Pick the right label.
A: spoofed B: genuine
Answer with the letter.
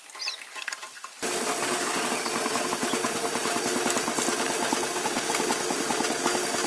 B